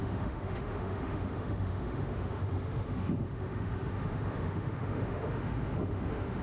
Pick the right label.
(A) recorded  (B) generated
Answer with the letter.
B